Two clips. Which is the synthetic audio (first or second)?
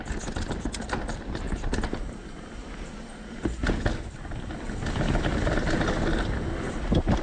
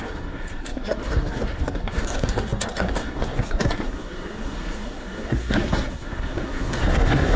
second